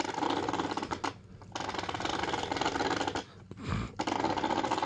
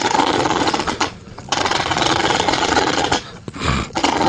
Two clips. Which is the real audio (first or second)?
first